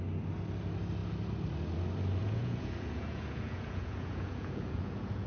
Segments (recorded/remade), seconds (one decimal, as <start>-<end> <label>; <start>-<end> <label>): 0.0-2.2 recorded; 2.2-5.3 remade